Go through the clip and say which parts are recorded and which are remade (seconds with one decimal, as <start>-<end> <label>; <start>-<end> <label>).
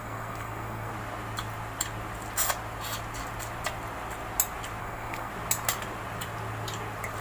0.0-0.9 remade; 0.9-4.8 recorded; 4.8-5.3 remade; 5.3-7.2 recorded